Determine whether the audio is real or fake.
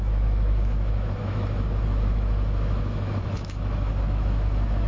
fake